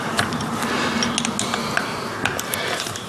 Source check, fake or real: real